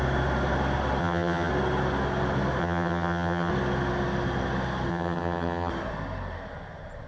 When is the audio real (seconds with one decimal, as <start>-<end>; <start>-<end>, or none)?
0.0-1.0; 1.5-2.6; 3.5-4.9; 5.7-7.1